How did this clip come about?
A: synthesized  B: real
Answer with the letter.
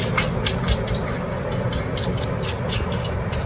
B